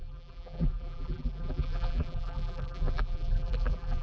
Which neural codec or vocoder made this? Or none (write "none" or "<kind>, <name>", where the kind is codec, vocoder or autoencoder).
vocoder, BigVGAN v2